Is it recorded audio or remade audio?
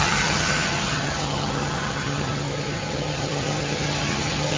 remade